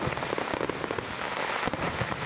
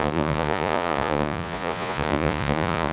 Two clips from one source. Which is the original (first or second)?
first